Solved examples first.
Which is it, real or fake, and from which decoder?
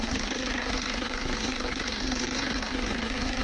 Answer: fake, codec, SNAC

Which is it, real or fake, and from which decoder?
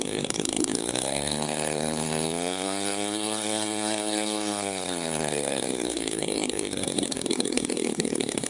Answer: fake, codec, SNAC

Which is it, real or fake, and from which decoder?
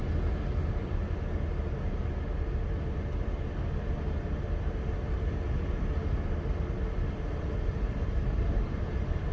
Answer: real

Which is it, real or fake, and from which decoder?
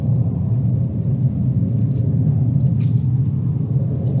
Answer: real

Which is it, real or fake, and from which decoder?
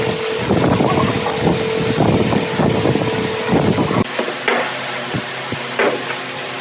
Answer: real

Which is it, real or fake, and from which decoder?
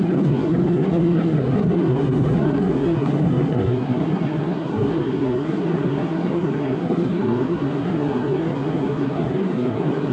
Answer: fake, codec, SNAC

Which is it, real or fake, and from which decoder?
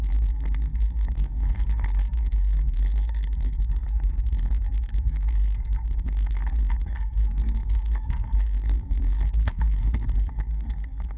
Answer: fake, codec, SNAC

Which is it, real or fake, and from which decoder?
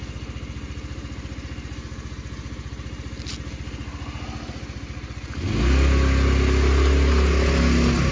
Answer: real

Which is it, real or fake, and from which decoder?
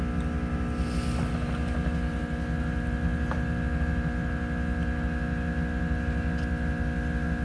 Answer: real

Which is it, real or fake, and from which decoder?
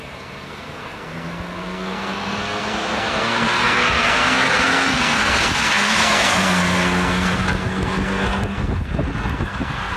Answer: fake, codec, SNAC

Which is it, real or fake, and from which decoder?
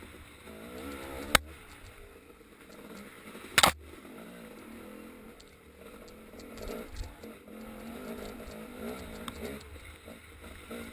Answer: real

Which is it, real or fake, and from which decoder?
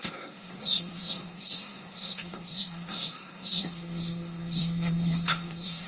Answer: fake, codec, SNAC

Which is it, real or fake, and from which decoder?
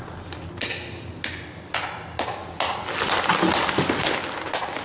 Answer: real